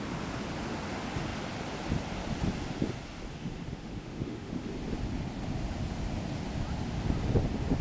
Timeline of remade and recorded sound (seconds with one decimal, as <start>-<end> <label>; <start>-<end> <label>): 0.0-3.3 recorded; 3.3-4.7 remade; 4.7-7.8 recorded